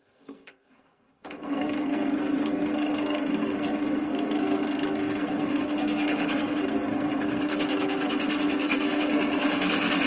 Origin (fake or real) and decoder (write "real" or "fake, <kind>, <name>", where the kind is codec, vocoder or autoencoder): fake, codec, SNAC